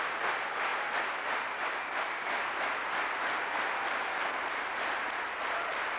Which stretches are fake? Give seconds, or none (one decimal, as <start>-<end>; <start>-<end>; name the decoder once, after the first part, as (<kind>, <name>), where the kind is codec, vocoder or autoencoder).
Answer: none